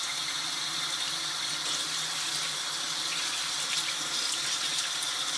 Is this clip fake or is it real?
real